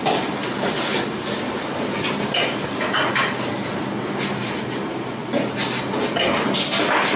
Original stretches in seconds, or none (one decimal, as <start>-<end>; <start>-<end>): 0.0-7.2